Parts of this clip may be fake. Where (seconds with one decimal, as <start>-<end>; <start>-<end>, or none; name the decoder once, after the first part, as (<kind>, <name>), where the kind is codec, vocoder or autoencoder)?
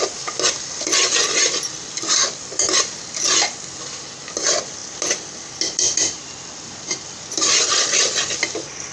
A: none